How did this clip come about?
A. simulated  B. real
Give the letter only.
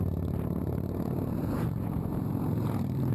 A